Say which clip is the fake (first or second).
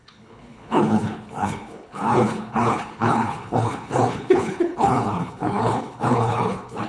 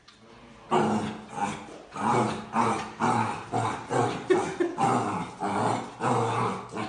first